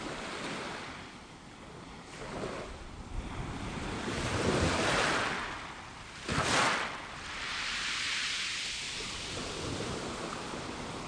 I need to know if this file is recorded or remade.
recorded